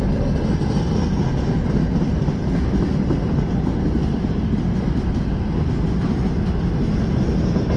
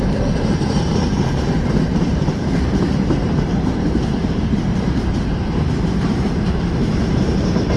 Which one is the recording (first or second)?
first